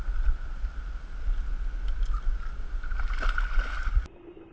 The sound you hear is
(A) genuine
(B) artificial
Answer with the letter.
A